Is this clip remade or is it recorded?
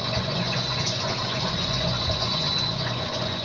remade